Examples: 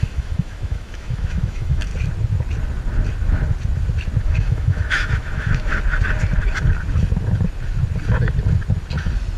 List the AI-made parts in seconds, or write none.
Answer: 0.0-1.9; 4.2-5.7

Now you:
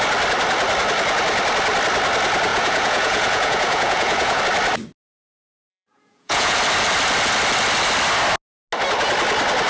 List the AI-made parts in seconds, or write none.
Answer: 2.5-4.4; 5.7-6.6

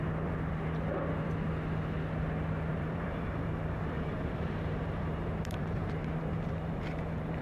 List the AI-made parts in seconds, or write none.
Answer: 2.7-7.4

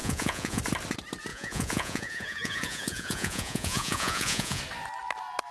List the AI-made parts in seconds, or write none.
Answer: 0.0-0.6; 1.3-4.6

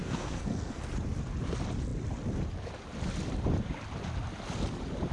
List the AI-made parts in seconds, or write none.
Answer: 0.0-0.9

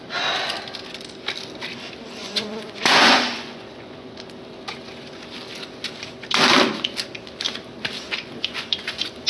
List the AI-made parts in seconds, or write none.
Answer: 2.2-4.1; 8.2-9.3

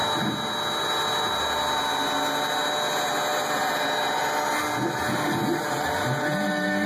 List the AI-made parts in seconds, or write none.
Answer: none